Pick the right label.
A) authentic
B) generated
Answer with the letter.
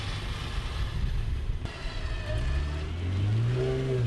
A